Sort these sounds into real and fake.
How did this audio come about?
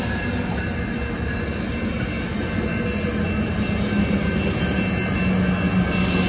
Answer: real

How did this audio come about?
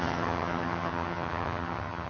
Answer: fake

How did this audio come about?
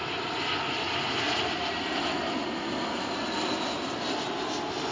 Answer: real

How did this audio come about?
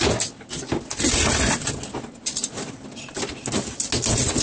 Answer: real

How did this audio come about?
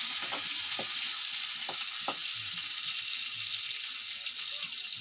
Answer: real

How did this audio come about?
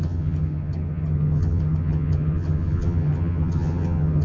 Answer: fake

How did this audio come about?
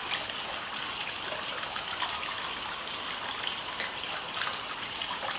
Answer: real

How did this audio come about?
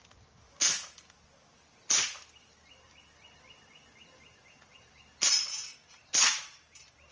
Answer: real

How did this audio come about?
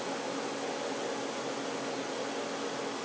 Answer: real